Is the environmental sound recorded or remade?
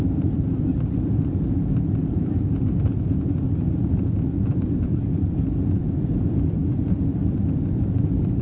remade